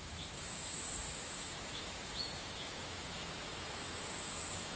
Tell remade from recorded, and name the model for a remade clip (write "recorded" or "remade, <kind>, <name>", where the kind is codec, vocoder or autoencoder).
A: remade, autoencoder, DAC-VAE